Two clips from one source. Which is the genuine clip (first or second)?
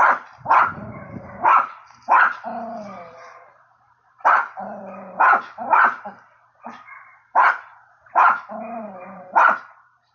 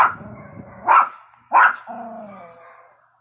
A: second